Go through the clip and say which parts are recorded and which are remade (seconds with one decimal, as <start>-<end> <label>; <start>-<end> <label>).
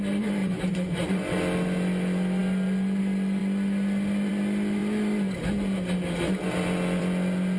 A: 0.0-0.4 recorded; 0.4-1.4 remade; 1.4-7.6 recorded